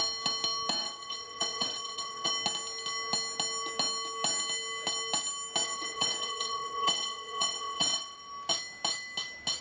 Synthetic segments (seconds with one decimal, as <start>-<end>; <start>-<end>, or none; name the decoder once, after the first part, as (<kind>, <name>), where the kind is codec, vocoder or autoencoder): 0.8-2.3 (vocoder, WaveNeXt); 5.6-8.2